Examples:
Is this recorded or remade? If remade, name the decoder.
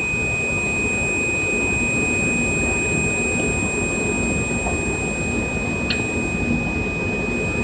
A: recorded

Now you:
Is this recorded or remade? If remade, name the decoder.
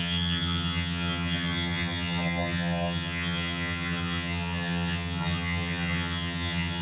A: remade, vocoder, HiFi-GAN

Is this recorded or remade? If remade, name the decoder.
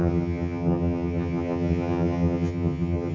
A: remade, vocoder, HiFi-GAN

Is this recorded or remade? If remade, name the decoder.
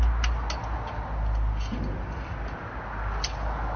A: recorded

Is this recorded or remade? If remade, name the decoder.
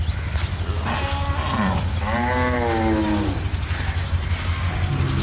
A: recorded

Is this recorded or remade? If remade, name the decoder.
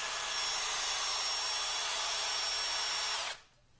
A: recorded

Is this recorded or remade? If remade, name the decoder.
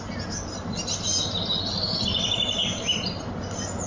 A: recorded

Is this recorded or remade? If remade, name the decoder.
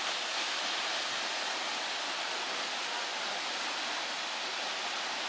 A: recorded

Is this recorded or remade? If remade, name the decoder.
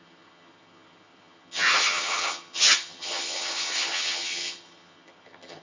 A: remade, vocoder, HiFi-GAN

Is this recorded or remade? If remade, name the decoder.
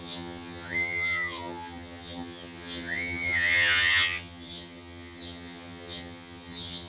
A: remade, vocoder, HiFi-GAN